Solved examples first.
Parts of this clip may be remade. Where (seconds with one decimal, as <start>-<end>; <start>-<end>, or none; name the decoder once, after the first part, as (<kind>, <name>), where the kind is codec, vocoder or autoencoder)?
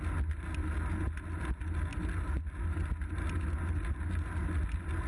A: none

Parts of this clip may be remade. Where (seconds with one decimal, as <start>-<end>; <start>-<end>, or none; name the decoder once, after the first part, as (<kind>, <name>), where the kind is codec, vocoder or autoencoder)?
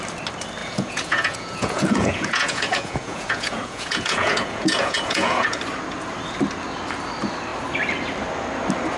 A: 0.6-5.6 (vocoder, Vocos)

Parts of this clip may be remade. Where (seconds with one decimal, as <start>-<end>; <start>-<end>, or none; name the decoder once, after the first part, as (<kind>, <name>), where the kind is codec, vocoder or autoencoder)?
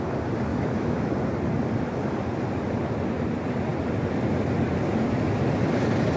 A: 0.5-1.1 (autoencoder, DAC-VAE)